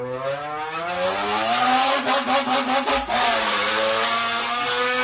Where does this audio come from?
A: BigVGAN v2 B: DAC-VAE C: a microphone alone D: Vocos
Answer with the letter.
C